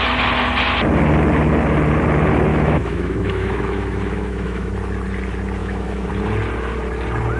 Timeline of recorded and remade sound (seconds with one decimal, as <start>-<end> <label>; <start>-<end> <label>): 0.0-2.5 recorded; 2.5-4.7 remade; 4.7-5.6 recorded; 5.6-6.1 remade; 6.1-7.4 recorded